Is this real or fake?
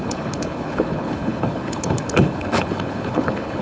fake